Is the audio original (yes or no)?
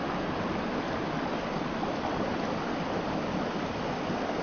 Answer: yes